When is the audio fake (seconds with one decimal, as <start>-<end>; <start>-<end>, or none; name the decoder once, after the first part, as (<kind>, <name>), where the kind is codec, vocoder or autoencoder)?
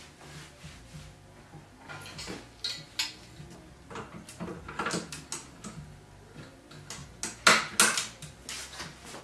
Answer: none